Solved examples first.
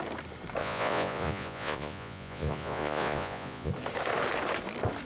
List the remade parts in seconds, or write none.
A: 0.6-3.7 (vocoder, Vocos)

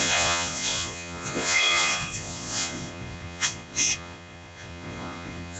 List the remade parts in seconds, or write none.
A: 0.0-5.6 (vocoder, Vocos)